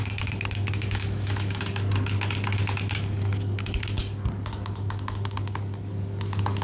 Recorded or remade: remade